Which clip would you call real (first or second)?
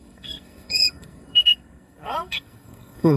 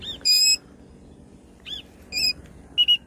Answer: second